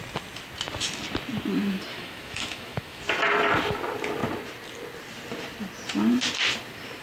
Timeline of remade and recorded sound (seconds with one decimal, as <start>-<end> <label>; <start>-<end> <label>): 0.0-1.9 recorded; 1.9-3.0 remade; 3.0-7.0 recorded